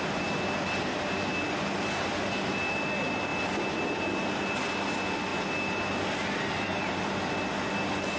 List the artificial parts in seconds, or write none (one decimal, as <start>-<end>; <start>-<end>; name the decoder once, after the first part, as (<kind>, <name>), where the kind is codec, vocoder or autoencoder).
none